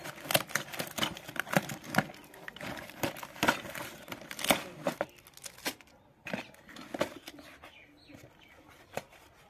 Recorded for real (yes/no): yes